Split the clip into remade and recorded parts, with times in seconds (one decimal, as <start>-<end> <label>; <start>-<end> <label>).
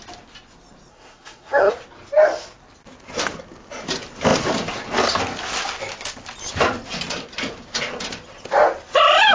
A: 0.0-0.9 recorded; 0.9-1.7 remade; 1.7-9.3 recorded